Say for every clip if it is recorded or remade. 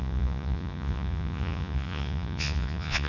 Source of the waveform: remade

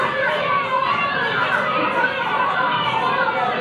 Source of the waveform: recorded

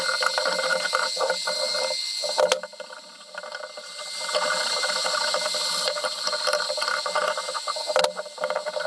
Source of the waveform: recorded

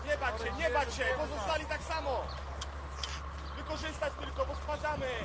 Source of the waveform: recorded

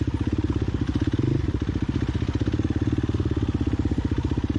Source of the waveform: recorded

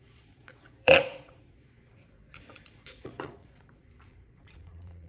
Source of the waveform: remade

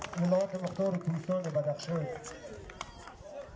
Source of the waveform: recorded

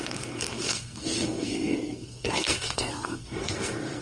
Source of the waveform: remade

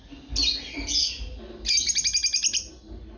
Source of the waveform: recorded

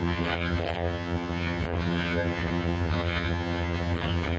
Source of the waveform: remade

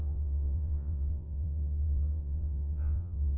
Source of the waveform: remade